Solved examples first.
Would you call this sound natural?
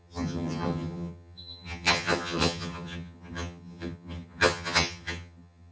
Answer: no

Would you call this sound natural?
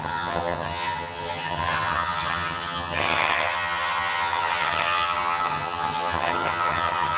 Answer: no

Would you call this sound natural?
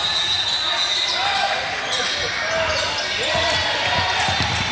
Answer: yes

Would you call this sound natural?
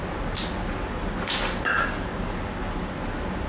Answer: yes